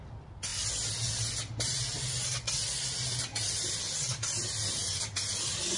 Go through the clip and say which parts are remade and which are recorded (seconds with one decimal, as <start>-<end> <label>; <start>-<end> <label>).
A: 0.0-5.8 recorded